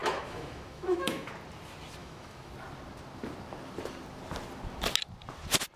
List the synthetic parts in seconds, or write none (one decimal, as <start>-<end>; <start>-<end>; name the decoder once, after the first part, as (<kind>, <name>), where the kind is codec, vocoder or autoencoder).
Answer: 0.0-1.3 (autoencoder, DAC-VAE); 2.0-2.5